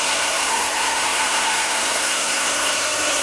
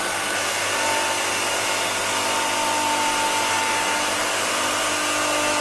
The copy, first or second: first